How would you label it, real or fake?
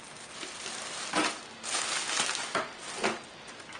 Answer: real